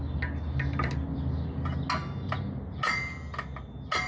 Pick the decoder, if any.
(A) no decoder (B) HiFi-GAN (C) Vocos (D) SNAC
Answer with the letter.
A